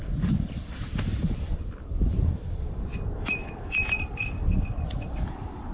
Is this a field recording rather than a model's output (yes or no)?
no